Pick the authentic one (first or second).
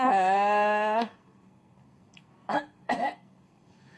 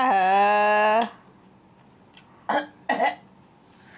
second